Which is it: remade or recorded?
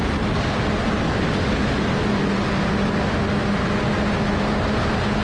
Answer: recorded